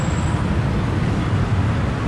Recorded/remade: recorded